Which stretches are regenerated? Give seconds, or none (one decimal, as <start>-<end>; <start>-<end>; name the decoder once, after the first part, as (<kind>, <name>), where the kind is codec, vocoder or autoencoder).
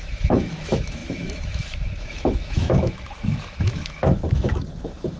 0.0-5.2 (autoencoder, DAC-VAE)